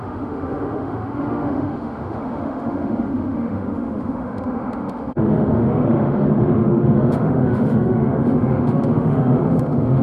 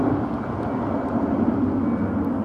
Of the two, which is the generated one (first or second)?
first